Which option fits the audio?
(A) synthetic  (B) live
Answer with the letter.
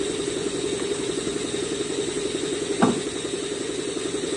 A